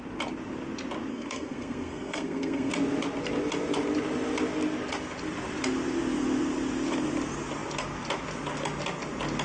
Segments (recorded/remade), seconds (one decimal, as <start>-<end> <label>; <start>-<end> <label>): 0.0-1.1 recorded; 1.1-2.7 remade; 2.7-9.4 recorded